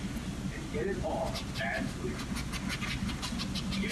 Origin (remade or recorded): recorded